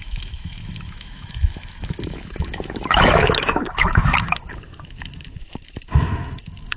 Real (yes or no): no